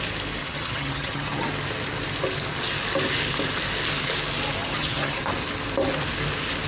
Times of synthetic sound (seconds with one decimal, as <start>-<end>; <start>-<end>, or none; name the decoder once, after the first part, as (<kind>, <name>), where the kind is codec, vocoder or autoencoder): 0.4-1.5 (vocoder, HiFi-GAN); 4.6-5.2